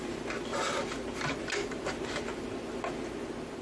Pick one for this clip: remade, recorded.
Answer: recorded